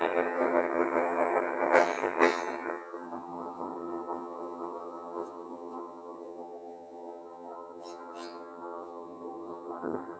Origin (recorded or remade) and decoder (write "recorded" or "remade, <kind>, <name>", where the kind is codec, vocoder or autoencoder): remade, vocoder, HiFi-GAN